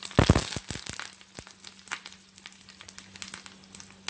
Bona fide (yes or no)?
yes